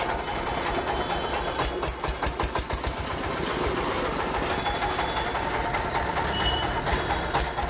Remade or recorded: recorded